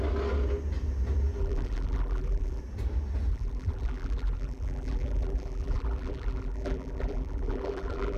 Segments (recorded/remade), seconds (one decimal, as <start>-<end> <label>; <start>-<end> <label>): 0.0-1.4 recorded; 1.4-2.6 remade; 2.6-3.3 recorded; 3.3-8.2 remade